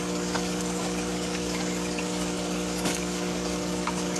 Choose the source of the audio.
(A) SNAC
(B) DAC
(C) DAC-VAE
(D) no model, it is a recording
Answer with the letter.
B